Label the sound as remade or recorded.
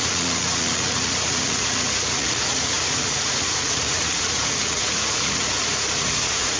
remade